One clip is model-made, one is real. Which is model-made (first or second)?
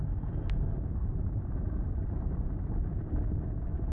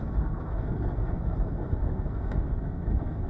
second